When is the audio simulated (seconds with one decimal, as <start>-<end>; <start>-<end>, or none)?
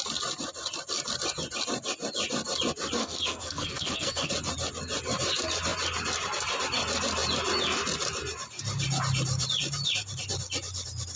3.0-4.3